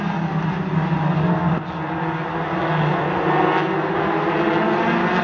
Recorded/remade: recorded